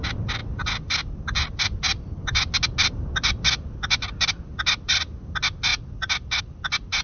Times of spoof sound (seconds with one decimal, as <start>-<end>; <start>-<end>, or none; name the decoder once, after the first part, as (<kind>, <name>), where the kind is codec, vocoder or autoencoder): 0.4-1.1 (vocoder, BigVGAN v2)